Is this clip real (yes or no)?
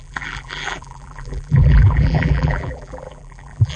no